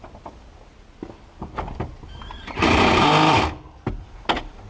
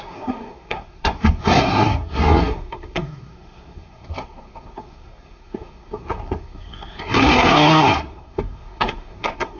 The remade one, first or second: second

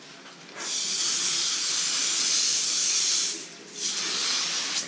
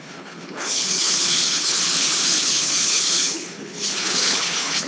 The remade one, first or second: second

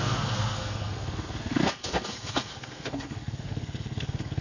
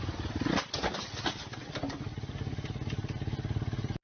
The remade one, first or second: first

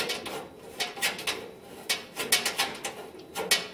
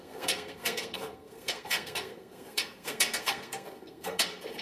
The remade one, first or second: second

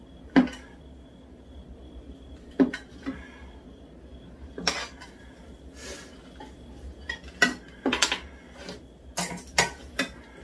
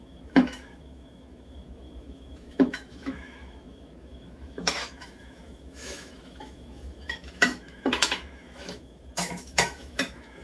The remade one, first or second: second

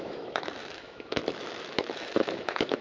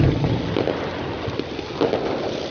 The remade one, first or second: first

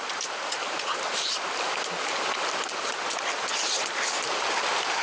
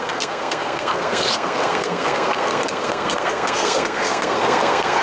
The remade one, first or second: second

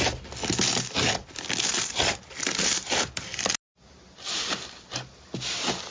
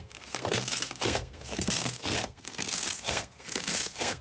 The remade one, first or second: second